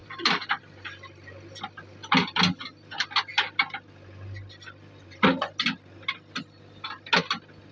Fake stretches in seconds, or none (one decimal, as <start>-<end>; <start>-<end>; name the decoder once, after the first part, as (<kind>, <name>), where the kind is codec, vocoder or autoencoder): none